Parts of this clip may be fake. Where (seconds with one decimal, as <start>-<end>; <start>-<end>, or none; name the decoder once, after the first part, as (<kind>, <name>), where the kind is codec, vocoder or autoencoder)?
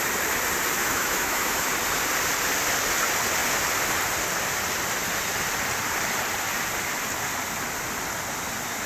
0.8-1.7 (autoencoder, DAC-VAE)